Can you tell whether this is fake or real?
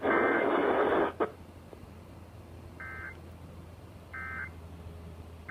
real